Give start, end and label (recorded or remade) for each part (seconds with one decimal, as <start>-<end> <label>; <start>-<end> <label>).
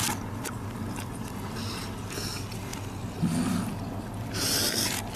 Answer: 0.0-5.2 recorded